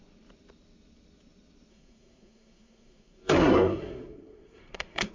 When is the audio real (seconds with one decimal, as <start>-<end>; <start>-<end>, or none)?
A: 0.0-1.7